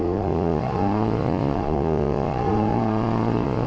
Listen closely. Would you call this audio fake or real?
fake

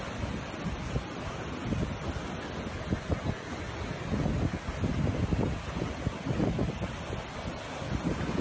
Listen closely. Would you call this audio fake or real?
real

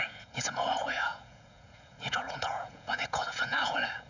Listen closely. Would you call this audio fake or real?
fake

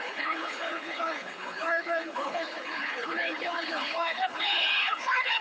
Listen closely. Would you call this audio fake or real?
fake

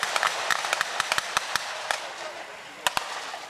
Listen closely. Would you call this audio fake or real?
real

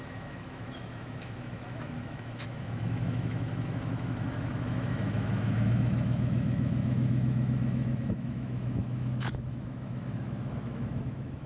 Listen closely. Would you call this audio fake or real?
fake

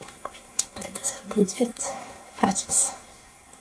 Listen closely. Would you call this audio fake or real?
fake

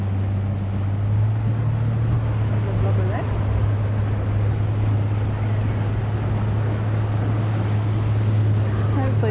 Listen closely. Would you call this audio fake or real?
real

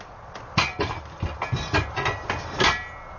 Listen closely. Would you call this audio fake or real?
real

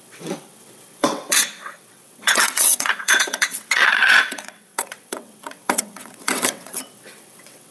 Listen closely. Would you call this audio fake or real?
fake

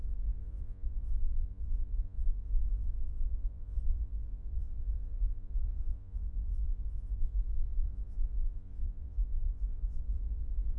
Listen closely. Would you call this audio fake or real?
fake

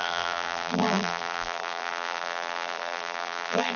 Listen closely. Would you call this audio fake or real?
fake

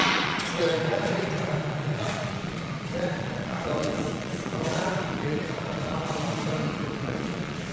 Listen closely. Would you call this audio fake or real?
fake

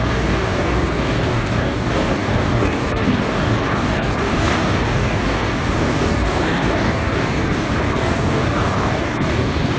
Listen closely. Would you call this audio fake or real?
fake